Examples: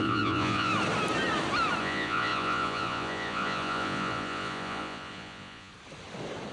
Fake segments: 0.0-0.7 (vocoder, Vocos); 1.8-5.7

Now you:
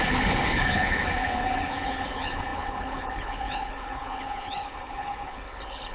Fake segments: 0.0-5.9 (codec, HILCodec)

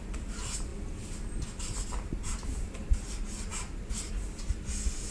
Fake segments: none

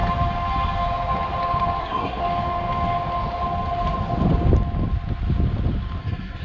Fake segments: 1.8-2.2 (codec, SNAC); 6.0-6.4

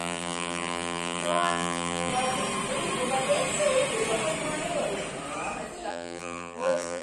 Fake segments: 0.0-2.1 (vocoder, BigVGAN v2); 5.9-7.0

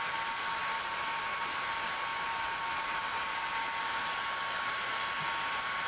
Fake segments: none

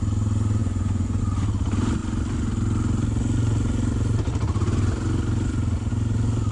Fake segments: 0.6-1.2 (vocoder, Vocos)